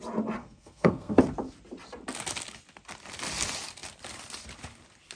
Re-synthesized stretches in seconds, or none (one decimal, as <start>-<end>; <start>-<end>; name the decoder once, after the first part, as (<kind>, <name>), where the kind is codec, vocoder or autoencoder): 0.4-1.2 (codec, SNAC)